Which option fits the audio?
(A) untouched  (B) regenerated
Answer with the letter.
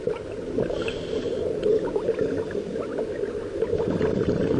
A